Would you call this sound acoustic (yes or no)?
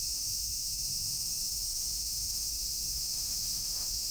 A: no